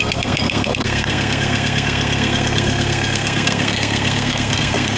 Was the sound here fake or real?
fake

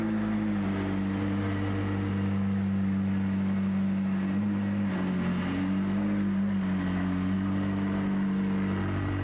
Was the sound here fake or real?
real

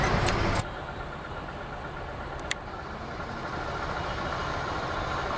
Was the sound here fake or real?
real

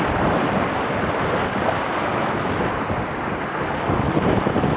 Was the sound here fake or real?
real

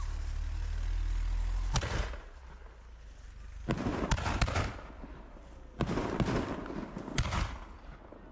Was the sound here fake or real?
real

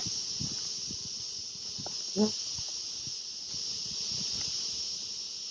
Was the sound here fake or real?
real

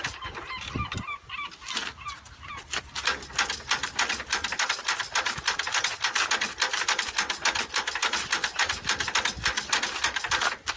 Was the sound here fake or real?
real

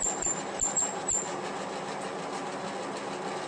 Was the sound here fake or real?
real